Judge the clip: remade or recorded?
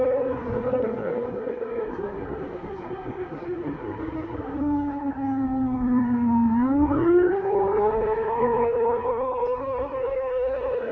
remade